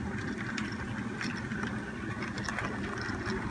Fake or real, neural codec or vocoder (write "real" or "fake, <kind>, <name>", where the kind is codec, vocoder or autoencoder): real